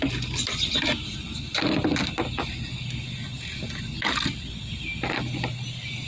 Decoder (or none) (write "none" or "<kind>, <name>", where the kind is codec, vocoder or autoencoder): none